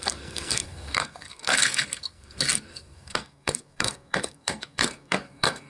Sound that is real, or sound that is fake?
fake